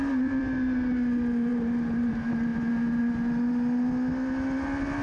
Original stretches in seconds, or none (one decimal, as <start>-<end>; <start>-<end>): 0.0-1.5; 2.1-5.0